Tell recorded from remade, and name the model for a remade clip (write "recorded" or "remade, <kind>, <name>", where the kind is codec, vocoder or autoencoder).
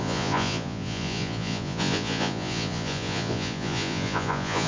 remade, vocoder, Vocos